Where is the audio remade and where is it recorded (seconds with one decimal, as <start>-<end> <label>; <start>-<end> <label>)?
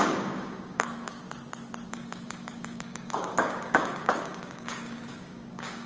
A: 0.0-1.2 remade; 1.2-1.9 recorded; 1.9-5.9 remade